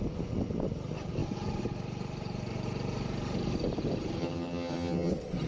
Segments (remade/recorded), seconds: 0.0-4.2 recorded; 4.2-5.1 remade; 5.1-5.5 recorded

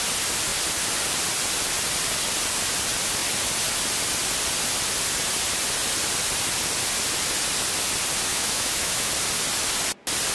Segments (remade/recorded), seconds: 0.0-8.3 recorded; 8.3-9.1 remade; 9.1-10.3 recorded

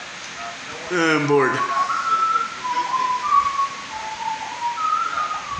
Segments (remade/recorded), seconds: 0.0-5.6 recorded

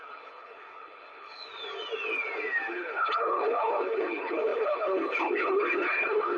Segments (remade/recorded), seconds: 0.0-1.5 remade; 1.5-2.7 recorded; 2.7-6.4 remade